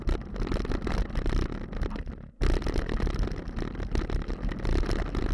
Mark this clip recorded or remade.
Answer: recorded